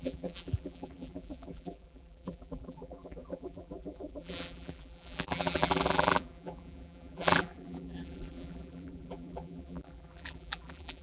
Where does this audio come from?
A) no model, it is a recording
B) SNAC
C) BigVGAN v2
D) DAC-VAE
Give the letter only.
C